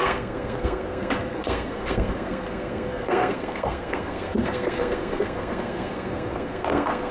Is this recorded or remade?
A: remade